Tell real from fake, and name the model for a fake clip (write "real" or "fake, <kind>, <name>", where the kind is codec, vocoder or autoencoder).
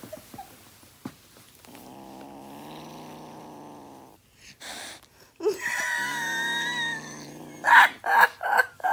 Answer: real